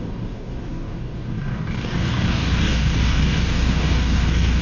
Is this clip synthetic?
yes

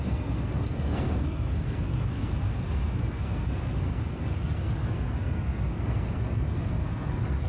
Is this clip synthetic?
yes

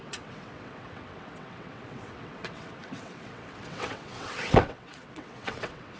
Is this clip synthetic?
yes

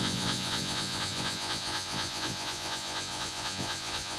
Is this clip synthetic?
yes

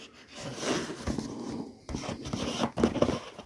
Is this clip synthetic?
no